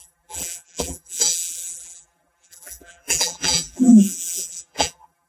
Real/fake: fake